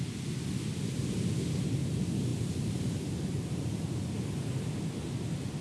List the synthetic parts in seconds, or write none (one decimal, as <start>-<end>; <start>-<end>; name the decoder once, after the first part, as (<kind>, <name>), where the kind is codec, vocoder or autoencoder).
none